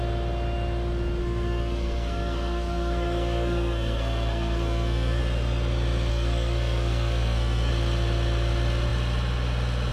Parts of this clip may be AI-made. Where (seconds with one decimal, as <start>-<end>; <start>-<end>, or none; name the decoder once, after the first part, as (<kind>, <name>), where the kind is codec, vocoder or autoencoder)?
1.2-5.2 (codec, SNAC); 6.1-7.7